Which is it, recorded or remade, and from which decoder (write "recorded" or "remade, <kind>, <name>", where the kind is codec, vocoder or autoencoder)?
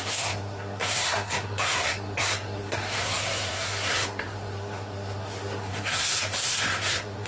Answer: remade, codec, SNAC